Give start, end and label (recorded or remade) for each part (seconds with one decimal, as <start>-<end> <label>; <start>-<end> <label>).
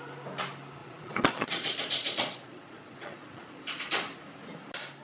0.0-0.8 recorded; 0.8-3.8 remade; 3.8-5.0 recorded